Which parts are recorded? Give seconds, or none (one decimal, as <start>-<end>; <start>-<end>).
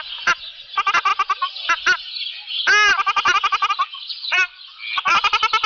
0.0-5.7